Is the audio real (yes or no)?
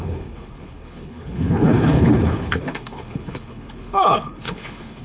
no